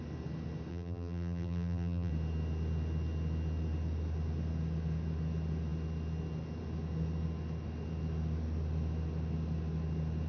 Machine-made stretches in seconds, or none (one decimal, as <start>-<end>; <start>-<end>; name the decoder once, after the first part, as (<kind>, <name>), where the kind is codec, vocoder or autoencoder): 0.7-2.1 (vocoder, BigVGAN v2)